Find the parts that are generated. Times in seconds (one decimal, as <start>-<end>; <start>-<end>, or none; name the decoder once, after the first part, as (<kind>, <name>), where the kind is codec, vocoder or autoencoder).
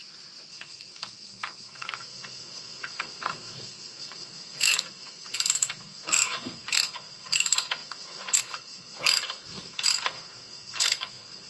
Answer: 0.5-11.5 (codec, SNAC)